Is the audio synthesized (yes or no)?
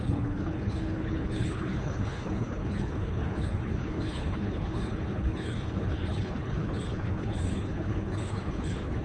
yes